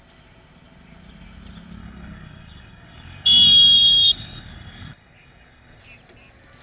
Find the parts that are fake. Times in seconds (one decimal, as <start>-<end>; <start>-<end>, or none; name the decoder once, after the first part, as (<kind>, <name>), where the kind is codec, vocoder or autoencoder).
1.8-5.8 (codec, DAC)